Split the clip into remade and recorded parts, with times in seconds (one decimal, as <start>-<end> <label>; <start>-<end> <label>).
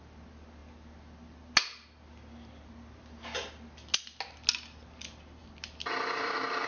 0.0-6.7 recorded